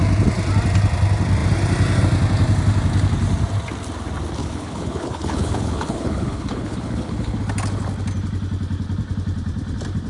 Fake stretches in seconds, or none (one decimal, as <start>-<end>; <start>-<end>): 4.4-7.4